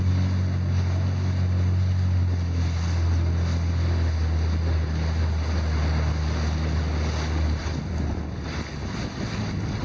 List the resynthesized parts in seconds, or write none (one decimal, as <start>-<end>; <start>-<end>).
7.6-8.7